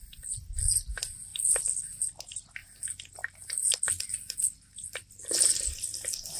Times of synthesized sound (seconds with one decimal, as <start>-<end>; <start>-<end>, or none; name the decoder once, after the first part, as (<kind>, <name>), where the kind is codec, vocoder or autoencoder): none